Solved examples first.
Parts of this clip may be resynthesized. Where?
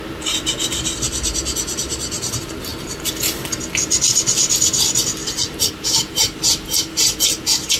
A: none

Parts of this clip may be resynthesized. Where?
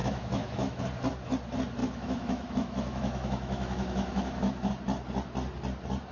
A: 0.0-0.8 (autoencoder, DAC-VAE); 1.8-4.7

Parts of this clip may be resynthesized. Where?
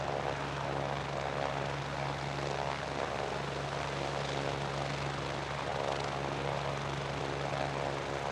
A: none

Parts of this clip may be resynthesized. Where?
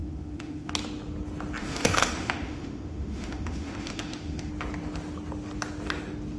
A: 0.0-0.7 (autoencoder, DAC-VAE); 1.6-4.5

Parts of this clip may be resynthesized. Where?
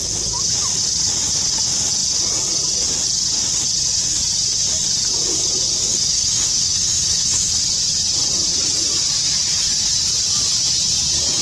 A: 5.9-7.6 (autoencoder, DAC-VAE)